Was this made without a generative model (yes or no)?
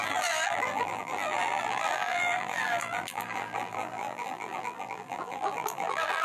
no